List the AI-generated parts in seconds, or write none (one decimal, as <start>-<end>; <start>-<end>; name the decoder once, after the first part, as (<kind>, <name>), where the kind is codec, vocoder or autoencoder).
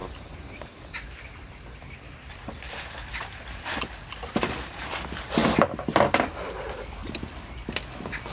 0.0-3.8 (vocoder, BigVGAN v2); 7.0-7.8